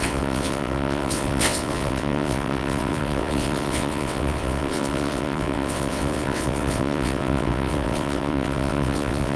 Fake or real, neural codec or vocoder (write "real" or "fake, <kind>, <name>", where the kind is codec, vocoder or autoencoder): fake, vocoder, WaveNeXt